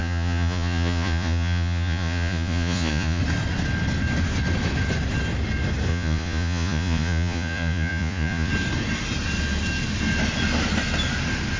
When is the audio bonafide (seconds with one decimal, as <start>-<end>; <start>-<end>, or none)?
3.2-5.9; 8.5-11.6